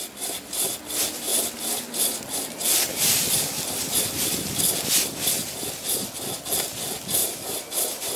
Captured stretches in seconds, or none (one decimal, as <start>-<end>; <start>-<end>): 0.0-1.3; 4.0-7.2